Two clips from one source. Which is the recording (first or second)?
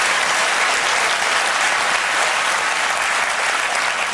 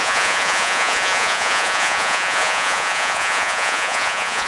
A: first